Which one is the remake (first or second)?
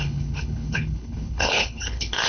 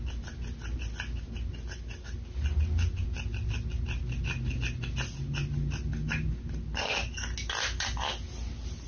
first